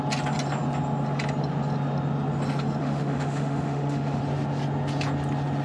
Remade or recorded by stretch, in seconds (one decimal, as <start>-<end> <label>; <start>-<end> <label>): 0.0-2.8 recorded; 2.8-4.2 remade; 4.2-5.6 recorded